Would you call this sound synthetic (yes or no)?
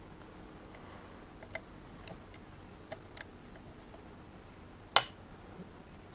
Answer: no